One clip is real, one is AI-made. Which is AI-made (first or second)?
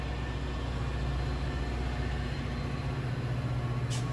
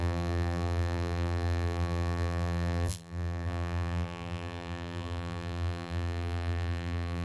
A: second